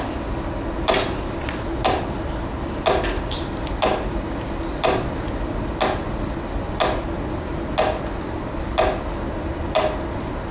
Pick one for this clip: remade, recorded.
recorded